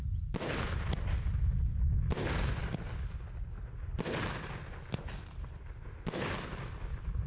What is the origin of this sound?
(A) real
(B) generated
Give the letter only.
A